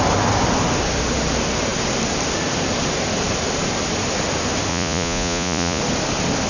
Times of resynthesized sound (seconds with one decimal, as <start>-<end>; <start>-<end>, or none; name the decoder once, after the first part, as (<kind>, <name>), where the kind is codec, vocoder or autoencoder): 4.7-5.8 (vocoder, Vocos)